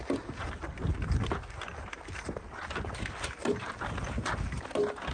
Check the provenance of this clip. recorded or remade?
recorded